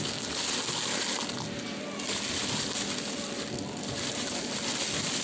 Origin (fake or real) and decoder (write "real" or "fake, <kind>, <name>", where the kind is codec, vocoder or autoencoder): real